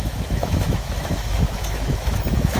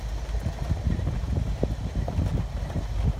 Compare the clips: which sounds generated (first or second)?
first